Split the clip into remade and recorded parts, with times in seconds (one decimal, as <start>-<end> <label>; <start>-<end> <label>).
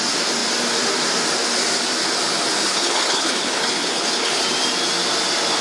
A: 0.0-2.7 recorded; 2.7-4.4 remade; 4.4-5.6 recorded